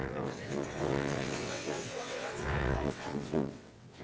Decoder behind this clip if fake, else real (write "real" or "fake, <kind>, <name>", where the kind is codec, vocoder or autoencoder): fake, vocoder, WaveNeXt